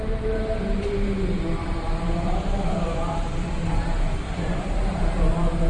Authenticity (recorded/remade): remade